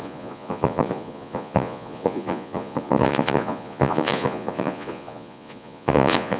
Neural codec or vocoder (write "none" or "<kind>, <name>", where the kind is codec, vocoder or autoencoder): vocoder, Vocos